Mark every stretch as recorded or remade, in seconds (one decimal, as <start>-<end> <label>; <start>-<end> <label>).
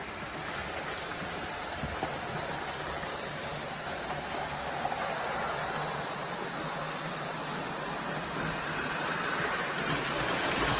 0.0-10.8 recorded